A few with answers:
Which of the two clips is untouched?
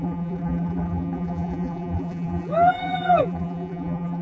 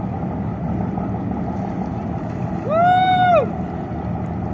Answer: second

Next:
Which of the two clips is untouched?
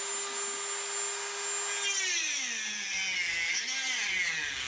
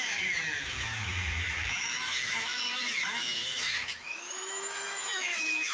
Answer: first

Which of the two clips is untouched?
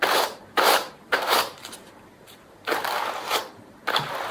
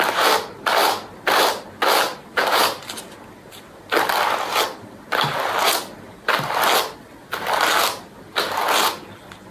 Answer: second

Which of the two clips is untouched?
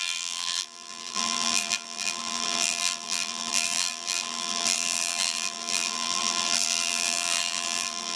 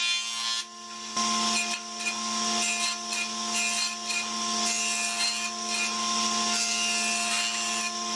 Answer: second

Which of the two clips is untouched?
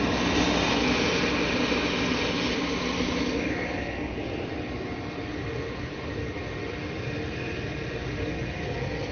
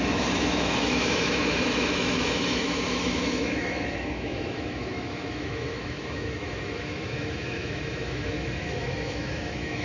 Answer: first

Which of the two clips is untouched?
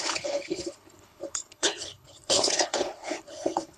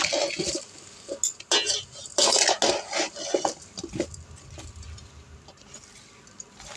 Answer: second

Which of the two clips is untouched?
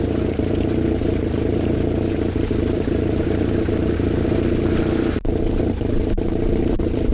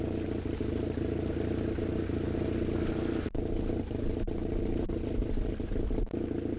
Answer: second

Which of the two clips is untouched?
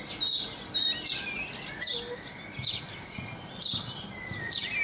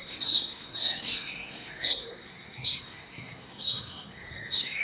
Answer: first